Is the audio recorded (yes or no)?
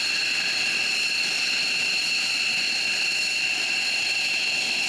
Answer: yes